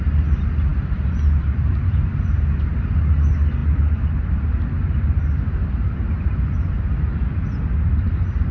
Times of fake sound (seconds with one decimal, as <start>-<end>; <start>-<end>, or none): 0.7-1.7